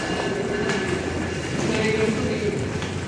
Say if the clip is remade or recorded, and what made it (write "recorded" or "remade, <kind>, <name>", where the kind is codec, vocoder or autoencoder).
remade, vocoder, BigVGAN v2